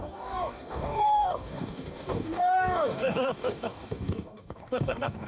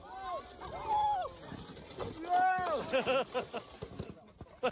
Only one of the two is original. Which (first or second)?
second